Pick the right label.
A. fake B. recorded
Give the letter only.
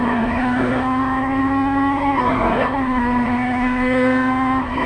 A